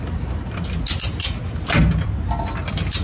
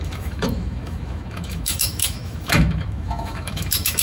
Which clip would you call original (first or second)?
first